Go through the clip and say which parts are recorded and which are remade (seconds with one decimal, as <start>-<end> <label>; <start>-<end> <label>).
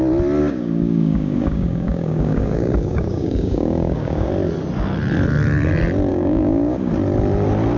0.0-0.4 recorded; 0.4-4.3 remade; 4.3-6.1 recorded; 6.1-6.9 remade; 6.9-7.8 recorded